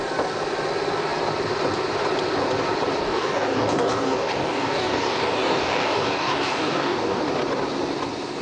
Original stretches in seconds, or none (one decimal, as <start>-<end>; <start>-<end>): 0.0-3.0; 7.2-8.4